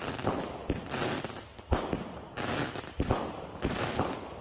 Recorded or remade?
recorded